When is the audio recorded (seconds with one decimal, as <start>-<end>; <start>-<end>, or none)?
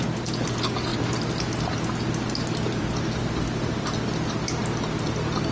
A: 0.0-5.5